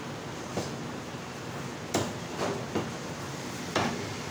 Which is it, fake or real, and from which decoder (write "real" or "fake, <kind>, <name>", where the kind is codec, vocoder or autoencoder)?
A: real